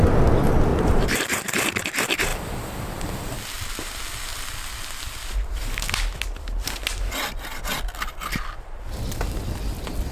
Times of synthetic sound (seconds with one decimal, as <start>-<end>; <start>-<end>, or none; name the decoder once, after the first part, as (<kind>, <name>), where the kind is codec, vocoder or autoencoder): 0.7-1.7 (vocoder, BigVGAN v2)